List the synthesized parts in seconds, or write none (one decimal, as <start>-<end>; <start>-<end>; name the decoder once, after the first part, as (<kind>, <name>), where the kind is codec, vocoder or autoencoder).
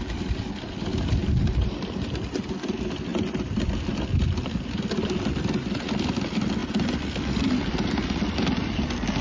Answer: 1.2-2.4 (vocoder, BigVGAN v2); 3.1-3.9; 6.6-7.5